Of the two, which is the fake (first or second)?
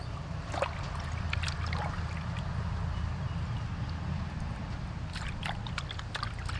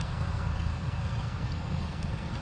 second